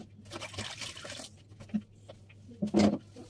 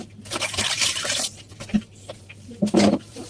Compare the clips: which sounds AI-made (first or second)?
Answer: second